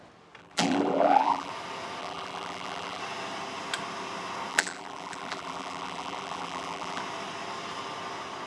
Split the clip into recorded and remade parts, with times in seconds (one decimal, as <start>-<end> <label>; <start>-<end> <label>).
0.0-0.4 recorded; 0.4-1.5 remade; 1.5-2.0 recorded; 2.0-3.0 remade; 3.0-4.5 recorded; 4.5-7.0 remade; 7.0-8.5 recorded